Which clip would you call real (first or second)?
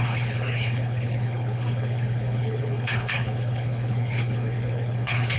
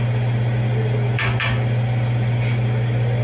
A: second